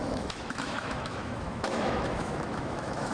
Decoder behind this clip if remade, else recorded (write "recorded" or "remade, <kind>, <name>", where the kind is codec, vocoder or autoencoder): remade, autoencoder, DAC-VAE